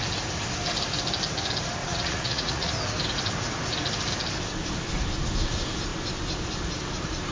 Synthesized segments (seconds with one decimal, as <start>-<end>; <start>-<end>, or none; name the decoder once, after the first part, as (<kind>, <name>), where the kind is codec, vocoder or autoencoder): 1.8-2.7 (vocoder, Vocos)